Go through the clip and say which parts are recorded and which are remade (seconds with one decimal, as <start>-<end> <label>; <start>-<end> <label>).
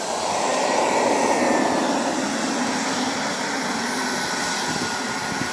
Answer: 0.0-5.5 recorded